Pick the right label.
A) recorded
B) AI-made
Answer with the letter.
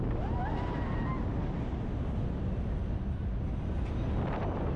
A